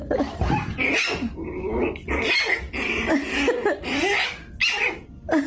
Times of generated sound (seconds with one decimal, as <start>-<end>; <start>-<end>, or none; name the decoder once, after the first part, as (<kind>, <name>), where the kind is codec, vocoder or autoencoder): none